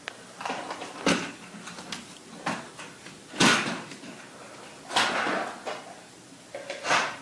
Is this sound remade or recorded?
recorded